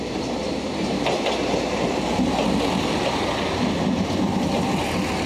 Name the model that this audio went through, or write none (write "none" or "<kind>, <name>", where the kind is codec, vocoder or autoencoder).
none